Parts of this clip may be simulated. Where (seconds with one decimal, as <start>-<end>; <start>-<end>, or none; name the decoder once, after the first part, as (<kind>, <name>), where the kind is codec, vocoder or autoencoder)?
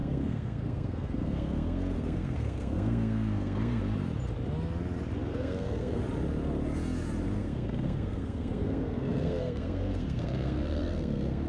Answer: 0.0-3.8 (codec, SNAC); 5.3-6.0; 7.4-11.5